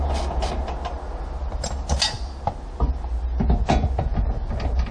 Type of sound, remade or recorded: recorded